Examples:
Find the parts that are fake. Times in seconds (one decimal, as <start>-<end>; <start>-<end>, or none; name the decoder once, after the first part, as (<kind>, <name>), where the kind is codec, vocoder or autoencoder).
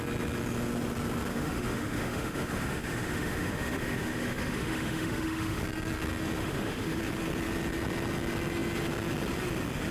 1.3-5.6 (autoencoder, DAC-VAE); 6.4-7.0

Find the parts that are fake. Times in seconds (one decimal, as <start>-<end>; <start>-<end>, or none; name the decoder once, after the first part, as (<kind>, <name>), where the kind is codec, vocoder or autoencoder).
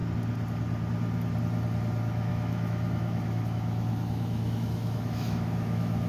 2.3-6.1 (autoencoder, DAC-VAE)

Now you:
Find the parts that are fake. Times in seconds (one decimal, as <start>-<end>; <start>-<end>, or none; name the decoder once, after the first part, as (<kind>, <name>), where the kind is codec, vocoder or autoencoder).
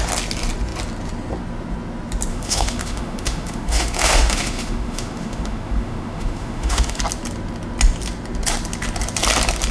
2.3-7.0 (autoencoder, DAC-VAE)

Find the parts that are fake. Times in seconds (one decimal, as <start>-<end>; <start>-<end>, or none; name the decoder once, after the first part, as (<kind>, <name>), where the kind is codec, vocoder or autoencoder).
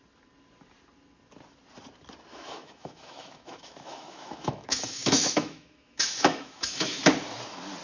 2.3-7.0 (autoencoder, DAC-VAE)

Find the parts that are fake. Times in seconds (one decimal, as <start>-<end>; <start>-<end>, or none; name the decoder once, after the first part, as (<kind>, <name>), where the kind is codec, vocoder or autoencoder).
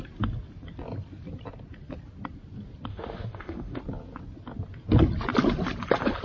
2.9-3.8 (autoencoder, DAC-VAE)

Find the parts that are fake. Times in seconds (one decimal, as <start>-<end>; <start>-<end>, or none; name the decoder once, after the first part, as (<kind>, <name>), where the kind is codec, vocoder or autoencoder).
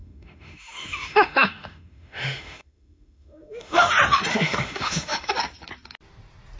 0.0-3.9 (autoencoder, DAC-VAE); 4.3-5.3